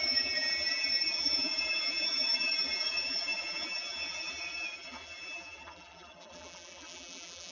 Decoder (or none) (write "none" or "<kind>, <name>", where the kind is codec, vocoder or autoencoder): vocoder, BigVGAN v2